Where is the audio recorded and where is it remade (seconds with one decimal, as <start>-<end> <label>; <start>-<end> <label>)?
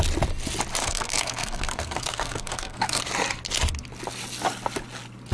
0.0-0.8 recorded; 0.8-3.0 remade; 3.0-5.3 recorded